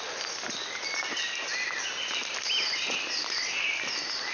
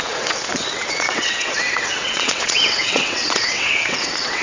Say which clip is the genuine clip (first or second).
first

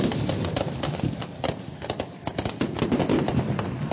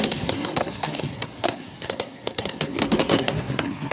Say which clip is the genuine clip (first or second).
first